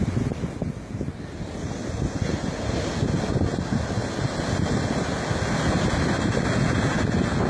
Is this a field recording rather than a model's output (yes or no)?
yes